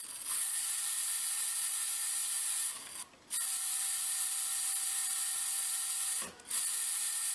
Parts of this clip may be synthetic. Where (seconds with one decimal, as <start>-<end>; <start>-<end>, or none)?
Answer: none